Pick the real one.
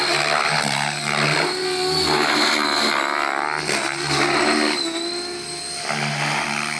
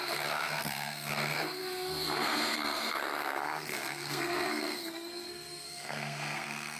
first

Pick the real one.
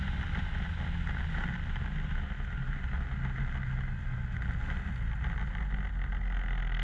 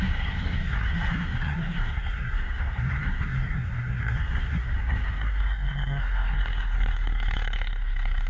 first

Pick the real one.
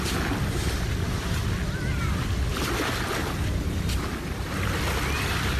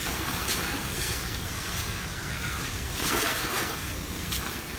first